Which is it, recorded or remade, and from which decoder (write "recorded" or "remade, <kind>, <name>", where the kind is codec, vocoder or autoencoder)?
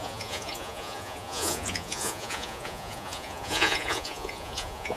remade, vocoder, Vocos